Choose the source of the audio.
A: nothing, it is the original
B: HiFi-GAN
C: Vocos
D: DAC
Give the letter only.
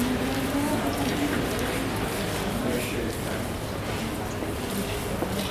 A